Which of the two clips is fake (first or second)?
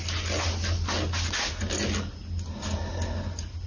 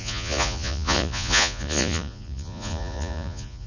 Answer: second